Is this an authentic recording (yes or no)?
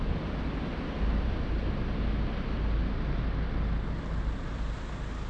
yes